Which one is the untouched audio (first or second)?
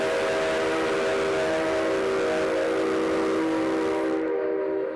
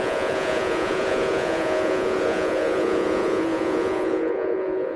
first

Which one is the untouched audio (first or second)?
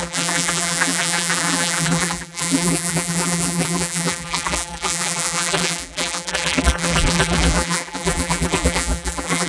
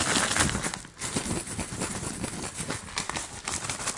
second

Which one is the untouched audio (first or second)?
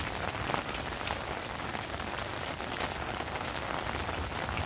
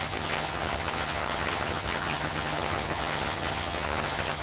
first